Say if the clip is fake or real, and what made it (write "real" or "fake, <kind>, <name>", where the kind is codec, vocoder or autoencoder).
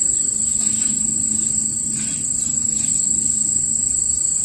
real